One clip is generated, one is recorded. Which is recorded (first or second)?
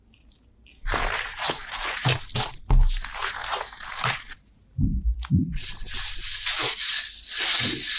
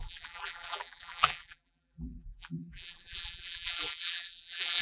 first